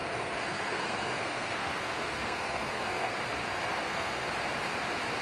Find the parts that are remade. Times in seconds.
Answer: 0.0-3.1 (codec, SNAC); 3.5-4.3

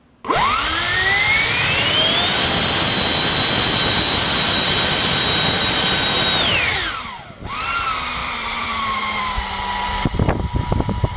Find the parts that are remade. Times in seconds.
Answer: 8.2-9.5 (vocoder, BigVGAN v2)

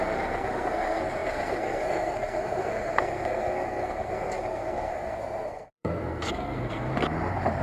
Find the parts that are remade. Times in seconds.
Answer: 0.0-6.9 (codec, SNAC)

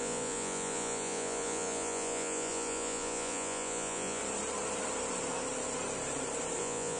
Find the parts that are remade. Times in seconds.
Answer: 0.0-4.2 (vocoder, Vocos); 6.6-7.0

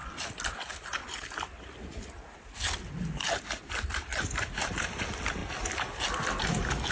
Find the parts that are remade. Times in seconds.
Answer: none

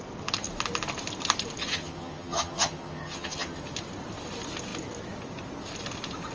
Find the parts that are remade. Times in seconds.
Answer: 1.6-3.6 (vocoder, HiFi-GAN)

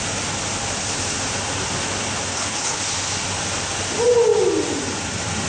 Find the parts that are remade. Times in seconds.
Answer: 2.3-2.8 (codec, HILCodec)

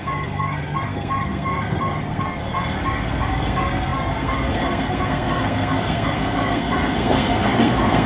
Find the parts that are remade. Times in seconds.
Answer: 0.0-8.1 (codec, SNAC)